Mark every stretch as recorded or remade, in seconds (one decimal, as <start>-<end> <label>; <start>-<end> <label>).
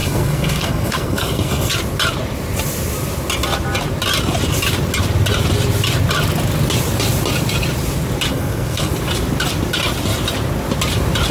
0.0-1.7 remade; 1.7-8.3 recorded; 8.3-8.9 remade; 8.9-11.3 recorded